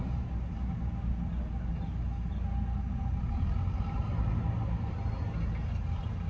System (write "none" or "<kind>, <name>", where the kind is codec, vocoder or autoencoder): none